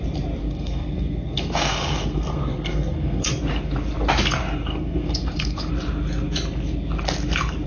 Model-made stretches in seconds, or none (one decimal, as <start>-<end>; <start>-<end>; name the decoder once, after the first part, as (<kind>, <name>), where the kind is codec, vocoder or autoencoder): 0.4-3.3 (codec, SNAC); 4.7-5.7